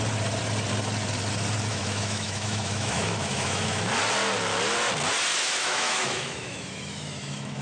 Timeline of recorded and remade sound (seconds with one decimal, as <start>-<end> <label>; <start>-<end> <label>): 0.0-1.7 recorded; 1.7-3.9 remade; 3.9-5.3 recorded; 5.3-7.6 remade